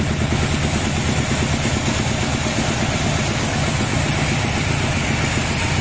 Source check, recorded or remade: recorded